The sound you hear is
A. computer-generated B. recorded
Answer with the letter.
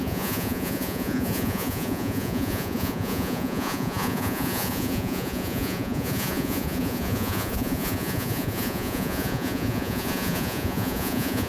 A